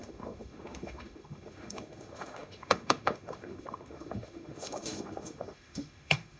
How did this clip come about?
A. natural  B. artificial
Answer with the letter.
B